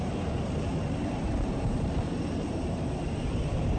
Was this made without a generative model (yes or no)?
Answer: no